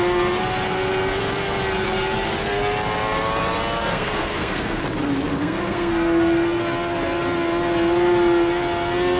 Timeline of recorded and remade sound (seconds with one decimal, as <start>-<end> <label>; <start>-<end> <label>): 0.0-3.9 recorded; 3.9-4.8 remade; 4.8-5.3 recorded; 5.3-6.6 remade; 6.6-9.2 recorded